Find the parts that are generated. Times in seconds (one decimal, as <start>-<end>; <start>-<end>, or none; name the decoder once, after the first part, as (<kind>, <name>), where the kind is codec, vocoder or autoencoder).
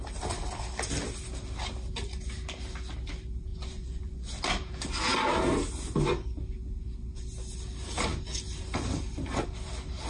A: 3.5-4.4 (vocoder, Vocos)